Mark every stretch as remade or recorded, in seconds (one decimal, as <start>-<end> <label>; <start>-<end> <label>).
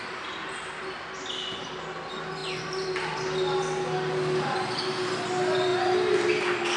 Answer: 0.0-6.8 recorded